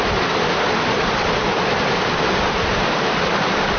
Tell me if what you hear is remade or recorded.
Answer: recorded